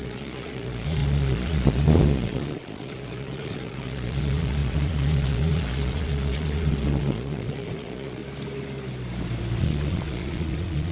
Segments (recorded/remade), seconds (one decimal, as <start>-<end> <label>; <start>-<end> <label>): 0.0-8.2 remade; 8.2-9.6 recorded; 9.6-10.9 remade